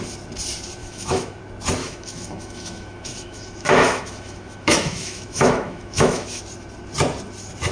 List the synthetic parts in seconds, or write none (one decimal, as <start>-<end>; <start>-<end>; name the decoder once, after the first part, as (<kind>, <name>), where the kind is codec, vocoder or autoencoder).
0.8-1.4 (autoencoder, DAC-VAE); 1.8-6.4